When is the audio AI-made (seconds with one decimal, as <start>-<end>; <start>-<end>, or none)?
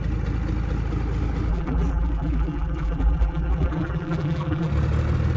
1.5-4.7